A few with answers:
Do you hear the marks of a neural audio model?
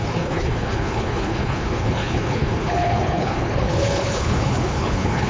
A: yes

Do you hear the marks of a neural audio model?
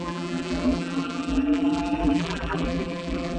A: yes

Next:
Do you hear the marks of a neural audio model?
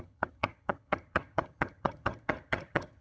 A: yes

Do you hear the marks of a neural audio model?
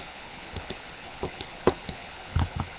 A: yes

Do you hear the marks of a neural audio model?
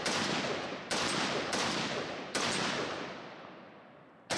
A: no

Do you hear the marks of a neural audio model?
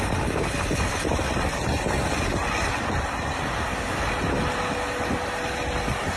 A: no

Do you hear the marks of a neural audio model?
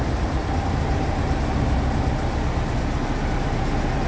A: no